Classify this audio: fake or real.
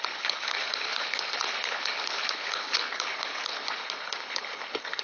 fake